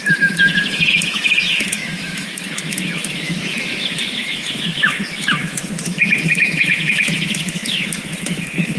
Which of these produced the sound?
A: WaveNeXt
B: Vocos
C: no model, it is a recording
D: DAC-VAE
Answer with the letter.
D